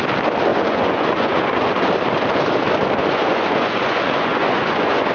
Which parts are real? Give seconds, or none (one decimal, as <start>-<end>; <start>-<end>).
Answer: 0.0-0.5; 1.9-3.0